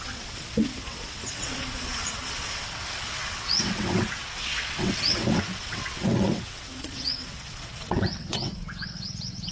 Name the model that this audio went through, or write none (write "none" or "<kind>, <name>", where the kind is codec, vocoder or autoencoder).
vocoder, WaveNeXt